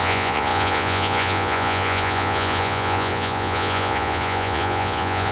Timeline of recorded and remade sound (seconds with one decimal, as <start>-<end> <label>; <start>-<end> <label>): 0.0-5.3 remade